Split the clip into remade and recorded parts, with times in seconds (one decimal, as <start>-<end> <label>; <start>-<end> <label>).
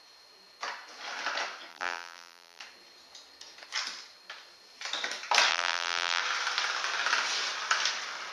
0.0-1.7 recorded; 1.7-2.6 remade; 2.6-5.5 recorded; 5.5-6.2 remade; 6.2-8.3 recorded